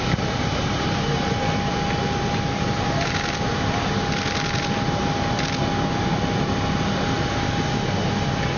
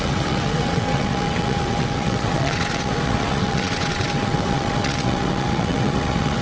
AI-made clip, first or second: second